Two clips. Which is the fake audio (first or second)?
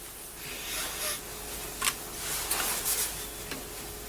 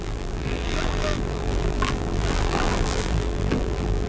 second